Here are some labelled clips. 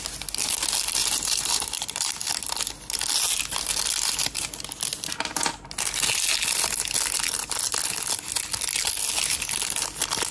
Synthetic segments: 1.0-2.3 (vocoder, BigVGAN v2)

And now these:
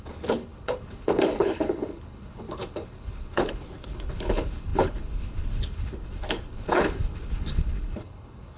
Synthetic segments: 0.0-8.6 (codec, HILCodec)

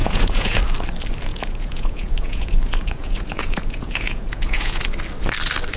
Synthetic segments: 0.0-0.6 (vocoder, Vocos); 1.3-4.8

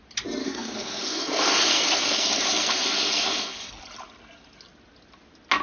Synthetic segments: 0.4-3.8 (codec, SNAC)

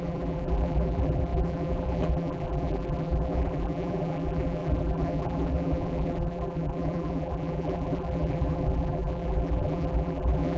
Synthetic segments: 0.0-10.6 (vocoder, BigVGAN v2)

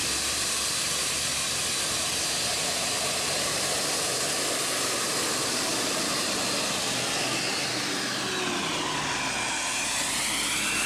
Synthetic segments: none

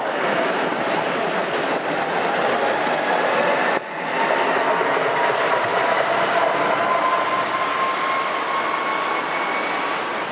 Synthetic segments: 3.4-4.1 (vocoder, Vocos)